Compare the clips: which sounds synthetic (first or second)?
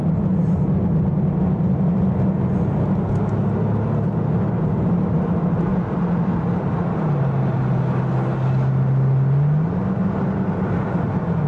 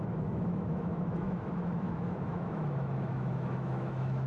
second